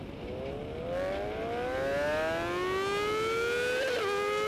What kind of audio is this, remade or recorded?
recorded